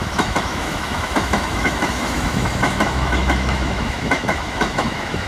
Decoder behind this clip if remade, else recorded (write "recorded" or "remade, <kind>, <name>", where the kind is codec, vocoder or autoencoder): remade, autoencoder, DAC-VAE